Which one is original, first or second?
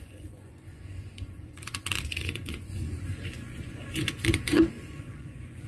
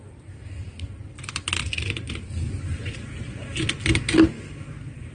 second